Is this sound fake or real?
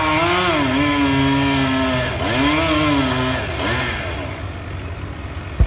real